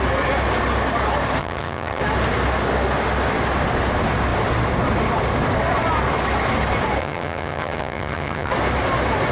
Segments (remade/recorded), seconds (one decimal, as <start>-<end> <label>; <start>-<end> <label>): 0.0-1.4 recorded; 1.4-2.0 remade; 2.0-7.0 recorded; 7.0-8.5 remade; 8.5-9.3 recorded